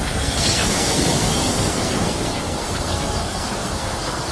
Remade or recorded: remade